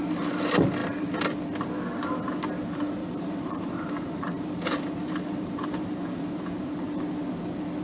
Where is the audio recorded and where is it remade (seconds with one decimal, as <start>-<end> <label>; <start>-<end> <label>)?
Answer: 0.0-3.0 recorded; 3.0-6.8 remade; 6.8-7.8 recorded